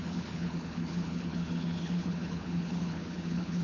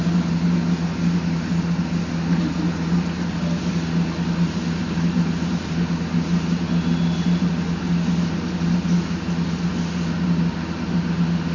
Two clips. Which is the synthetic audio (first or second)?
first